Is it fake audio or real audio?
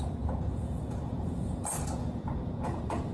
fake